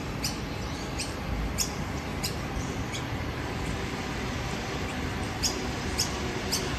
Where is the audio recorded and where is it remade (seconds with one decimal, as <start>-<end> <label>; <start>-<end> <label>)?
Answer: 0.0-6.8 recorded